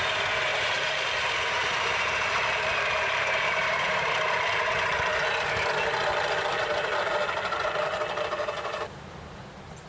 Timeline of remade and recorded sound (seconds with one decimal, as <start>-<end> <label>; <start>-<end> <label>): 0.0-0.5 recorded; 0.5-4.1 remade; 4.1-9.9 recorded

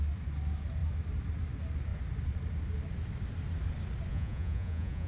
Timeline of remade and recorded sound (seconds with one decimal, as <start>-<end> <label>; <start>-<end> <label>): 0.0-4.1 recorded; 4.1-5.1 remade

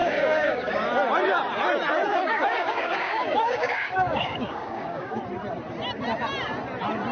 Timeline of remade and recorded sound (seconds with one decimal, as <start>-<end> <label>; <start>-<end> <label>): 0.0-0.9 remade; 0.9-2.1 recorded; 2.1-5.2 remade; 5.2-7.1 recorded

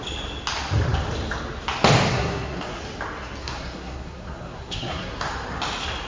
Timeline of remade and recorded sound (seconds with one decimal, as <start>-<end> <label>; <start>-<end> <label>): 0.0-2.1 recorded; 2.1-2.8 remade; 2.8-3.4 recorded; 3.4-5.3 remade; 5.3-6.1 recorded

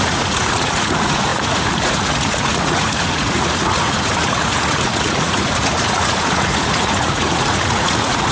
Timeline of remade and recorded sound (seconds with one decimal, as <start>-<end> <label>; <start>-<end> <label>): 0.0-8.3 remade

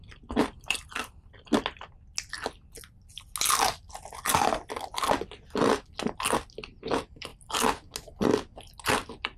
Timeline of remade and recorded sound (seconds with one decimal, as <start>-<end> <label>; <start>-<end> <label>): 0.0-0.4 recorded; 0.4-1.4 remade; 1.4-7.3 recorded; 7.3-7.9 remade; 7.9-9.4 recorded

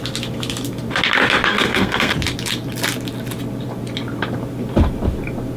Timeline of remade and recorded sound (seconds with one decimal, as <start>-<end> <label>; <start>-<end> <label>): 0.0-1.5 recorded; 1.5-2.1 remade; 2.1-5.6 recorded

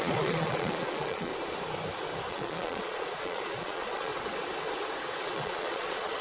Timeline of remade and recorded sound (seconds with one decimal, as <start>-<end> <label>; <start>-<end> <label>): 0.0-1.3 remade; 1.3-2.3 recorded; 2.3-4.1 remade; 4.1-5.2 recorded; 5.2-6.2 remade